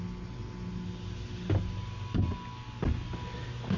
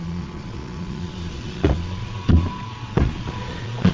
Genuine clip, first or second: first